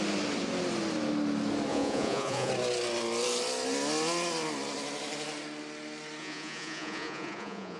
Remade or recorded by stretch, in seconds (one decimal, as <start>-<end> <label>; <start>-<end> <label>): 0.0-1.7 recorded; 1.7-2.5 remade; 2.5-6.2 recorded; 6.2-7.8 remade

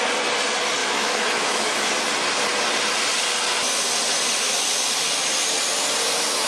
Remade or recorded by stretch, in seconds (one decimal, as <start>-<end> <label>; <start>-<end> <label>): 0.0-0.8 recorded; 0.8-1.9 remade; 1.9-6.5 recorded